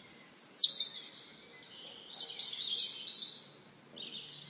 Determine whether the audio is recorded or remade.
recorded